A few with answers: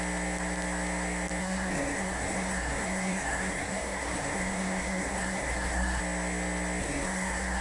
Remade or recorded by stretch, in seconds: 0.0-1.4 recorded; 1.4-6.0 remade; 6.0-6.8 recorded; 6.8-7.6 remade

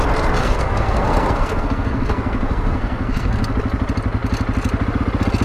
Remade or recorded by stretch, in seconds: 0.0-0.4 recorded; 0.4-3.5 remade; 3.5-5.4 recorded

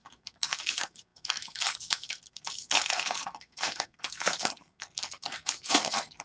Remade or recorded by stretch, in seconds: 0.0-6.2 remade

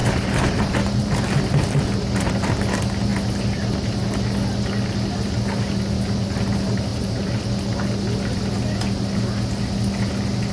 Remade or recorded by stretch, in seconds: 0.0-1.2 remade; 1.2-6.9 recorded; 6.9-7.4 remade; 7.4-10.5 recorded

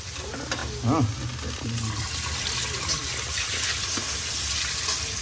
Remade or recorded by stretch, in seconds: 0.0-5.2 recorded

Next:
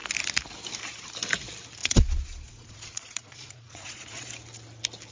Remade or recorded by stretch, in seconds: 0.0-1.8 recorded; 1.8-4.3 remade; 4.3-5.1 recorded